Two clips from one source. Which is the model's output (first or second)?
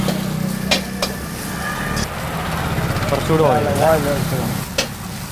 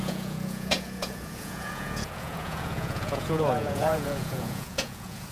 second